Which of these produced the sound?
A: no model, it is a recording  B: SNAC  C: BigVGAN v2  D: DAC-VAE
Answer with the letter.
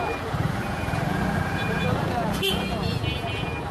C